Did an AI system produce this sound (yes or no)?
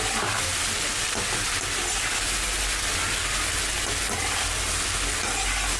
no